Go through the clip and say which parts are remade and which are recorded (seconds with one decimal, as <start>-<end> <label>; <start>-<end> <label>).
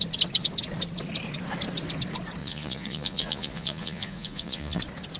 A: 0.0-2.4 recorded; 2.4-4.8 remade; 4.8-5.2 recorded